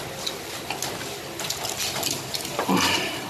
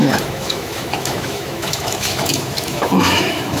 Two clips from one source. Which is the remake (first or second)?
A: second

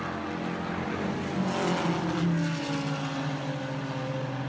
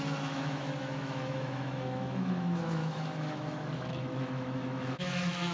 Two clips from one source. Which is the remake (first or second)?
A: second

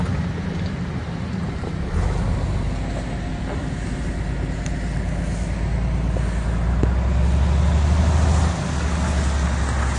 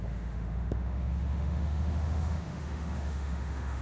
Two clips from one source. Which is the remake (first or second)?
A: second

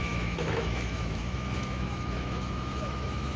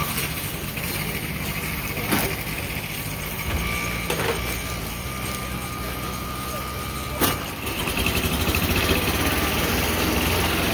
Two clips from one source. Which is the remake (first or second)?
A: first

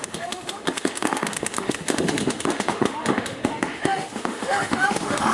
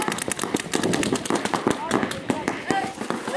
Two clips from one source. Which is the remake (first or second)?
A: first